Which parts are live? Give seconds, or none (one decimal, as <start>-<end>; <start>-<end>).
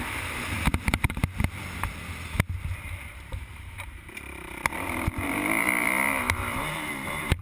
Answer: 1.2-3.1